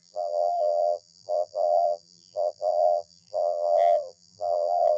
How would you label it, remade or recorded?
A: remade